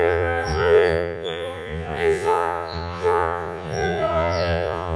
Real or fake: fake